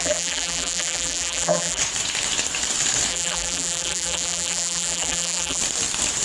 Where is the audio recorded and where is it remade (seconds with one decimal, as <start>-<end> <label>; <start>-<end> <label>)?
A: 0.0-1.8 remade; 1.8-3.1 recorded; 3.1-5.6 remade; 5.6-6.2 recorded